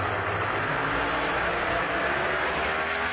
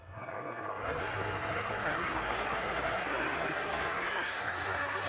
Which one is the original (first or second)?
first